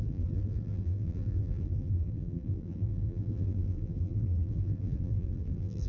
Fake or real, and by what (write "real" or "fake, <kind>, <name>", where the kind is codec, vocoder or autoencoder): fake, vocoder, BigVGAN v2